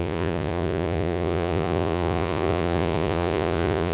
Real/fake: fake